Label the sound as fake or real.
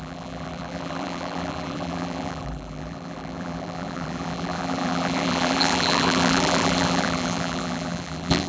fake